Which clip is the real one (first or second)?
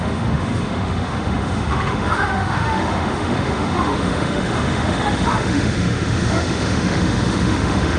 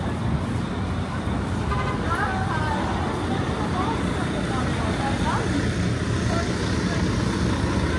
second